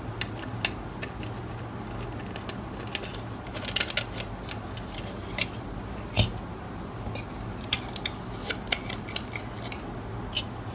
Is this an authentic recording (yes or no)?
yes